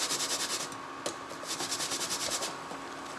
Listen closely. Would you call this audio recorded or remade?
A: recorded